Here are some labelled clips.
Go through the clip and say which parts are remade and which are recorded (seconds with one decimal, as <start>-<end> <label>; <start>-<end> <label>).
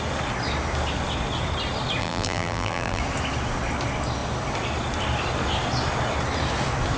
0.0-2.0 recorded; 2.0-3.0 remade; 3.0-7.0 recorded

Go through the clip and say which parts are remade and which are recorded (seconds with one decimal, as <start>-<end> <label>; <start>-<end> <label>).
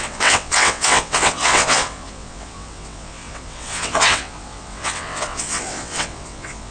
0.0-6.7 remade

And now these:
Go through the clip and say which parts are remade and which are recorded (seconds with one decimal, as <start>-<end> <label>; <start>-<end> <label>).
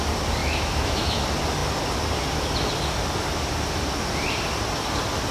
0.0-0.4 recorded; 0.4-1.2 remade; 1.2-5.3 recorded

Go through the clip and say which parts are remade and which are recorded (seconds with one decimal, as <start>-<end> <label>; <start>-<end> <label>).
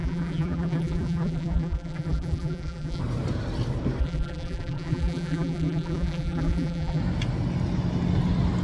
0.0-3.0 remade; 3.0-4.0 recorded; 4.0-7.0 remade; 7.0-8.6 recorded